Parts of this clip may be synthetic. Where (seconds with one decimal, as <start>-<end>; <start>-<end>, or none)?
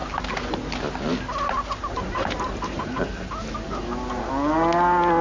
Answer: 1.9-3.1